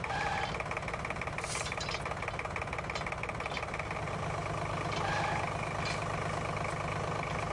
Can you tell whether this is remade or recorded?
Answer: recorded